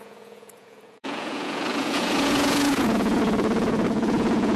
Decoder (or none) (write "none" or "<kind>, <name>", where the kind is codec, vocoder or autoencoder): vocoder, Vocos